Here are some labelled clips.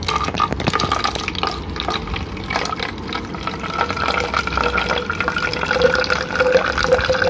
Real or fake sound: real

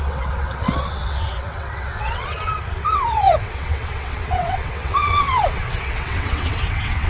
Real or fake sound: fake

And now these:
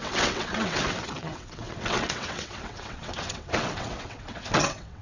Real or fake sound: fake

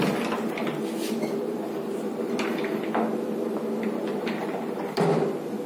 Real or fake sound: fake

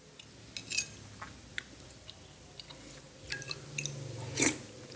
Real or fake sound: real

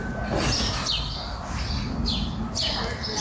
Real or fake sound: real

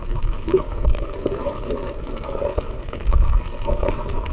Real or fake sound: fake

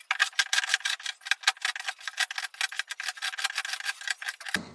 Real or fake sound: real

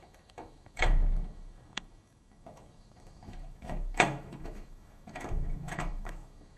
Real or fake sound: fake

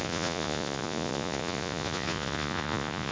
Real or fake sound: fake